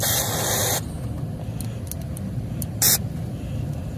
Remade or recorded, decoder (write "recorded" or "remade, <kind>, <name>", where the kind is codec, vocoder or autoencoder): recorded